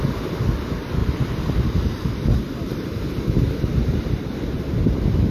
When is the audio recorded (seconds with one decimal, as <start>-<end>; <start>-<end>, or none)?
0.0-1.0; 4.2-5.3